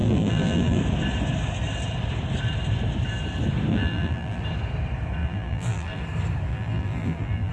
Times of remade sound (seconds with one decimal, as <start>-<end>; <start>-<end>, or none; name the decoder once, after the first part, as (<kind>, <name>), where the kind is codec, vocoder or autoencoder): 0.0-0.8 (vocoder, BigVGAN v2); 3.7-4.4; 5.2-6.0; 6.5-7.5